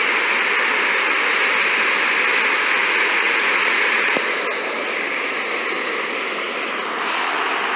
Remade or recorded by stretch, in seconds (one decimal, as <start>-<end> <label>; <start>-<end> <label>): 0.0-2.8 recorded; 2.8-4.1 remade; 4.1-7.8 recorded